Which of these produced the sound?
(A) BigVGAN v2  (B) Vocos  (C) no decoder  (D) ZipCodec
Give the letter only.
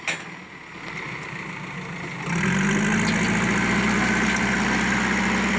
C